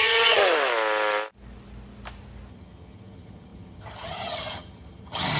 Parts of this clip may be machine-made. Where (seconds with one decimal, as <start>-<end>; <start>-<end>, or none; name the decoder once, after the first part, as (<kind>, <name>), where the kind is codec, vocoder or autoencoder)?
0.0-0.4 (vocoder, HiFi-GAN); 2.5-5.4

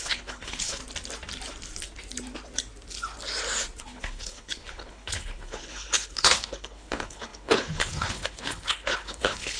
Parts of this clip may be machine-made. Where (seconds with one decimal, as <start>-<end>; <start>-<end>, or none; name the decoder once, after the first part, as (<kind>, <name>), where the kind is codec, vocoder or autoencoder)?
0.0-0.8 (codec, HILCodec); 3.8-9.6

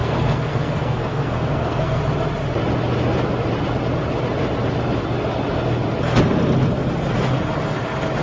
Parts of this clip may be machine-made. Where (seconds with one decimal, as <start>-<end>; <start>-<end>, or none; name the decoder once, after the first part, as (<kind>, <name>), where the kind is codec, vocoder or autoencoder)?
0.0-2.0 (codec, SNAC)

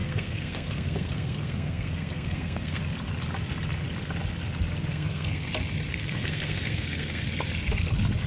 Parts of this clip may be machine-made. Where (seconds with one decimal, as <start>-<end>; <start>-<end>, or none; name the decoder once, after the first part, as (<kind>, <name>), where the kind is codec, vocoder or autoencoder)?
0.0-2.8 (codec, SNAC); 4.9-5.5; 5.9-7.2

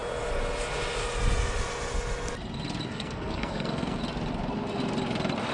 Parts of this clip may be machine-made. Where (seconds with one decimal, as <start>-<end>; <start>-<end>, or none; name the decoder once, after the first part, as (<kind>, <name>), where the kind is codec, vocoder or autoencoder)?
2.9-4.0 (codec, SNAC)

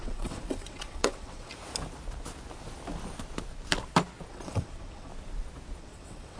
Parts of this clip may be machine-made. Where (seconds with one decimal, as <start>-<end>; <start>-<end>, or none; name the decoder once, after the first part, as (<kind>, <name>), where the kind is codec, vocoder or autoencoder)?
0.0-1.5 (vocoder, WaveNeXt); 4.3-5.1; 5.8-6.4

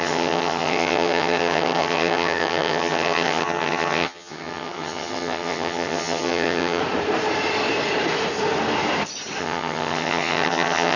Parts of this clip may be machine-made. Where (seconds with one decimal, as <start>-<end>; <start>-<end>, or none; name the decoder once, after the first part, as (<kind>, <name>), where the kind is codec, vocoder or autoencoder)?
0.0-6.8 (vocoder, HiFi-GAN); 9.4-11.0

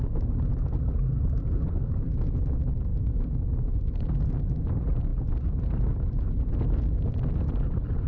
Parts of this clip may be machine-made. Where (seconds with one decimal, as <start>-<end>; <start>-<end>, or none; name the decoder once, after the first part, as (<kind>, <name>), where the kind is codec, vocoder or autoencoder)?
none